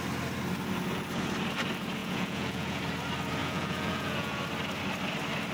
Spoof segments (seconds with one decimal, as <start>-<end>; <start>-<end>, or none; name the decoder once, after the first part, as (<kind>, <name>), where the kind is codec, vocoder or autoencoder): 2.0-2.8 (vocoder, Vocos); 3.4-4.4